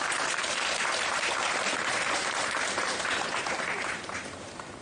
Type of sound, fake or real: fake